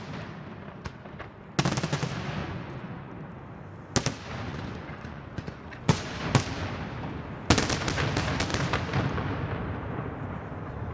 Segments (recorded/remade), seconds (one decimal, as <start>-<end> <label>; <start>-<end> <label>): 0.0-2.4 recorded; 2.4-3.1 remade; 3.1-4.5 recorded; 4.5-6.3 remade; 6.3-10.9 recorded